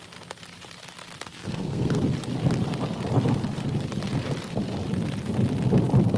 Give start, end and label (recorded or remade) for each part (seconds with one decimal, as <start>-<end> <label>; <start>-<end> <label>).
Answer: 0.0-1.3 recorded; 1.3-2.0 remade; 2.0-6.2 recorded